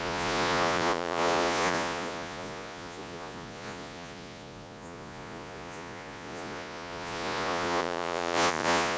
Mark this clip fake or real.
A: fake